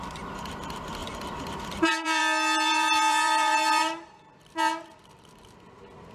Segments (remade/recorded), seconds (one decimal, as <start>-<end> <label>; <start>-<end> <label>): 0.0-1.0 recorded; 1.0-2.2 remade; 2.2-2.7 recorded; 2.7-4.1 remade; 4.1-6.1 recorded